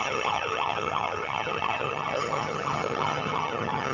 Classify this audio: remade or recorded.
remade